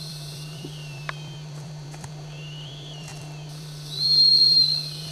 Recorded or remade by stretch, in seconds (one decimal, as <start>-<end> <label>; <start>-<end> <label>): 0.0-5.1 remade